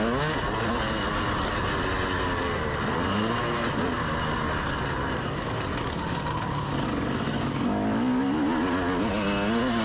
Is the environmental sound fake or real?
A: real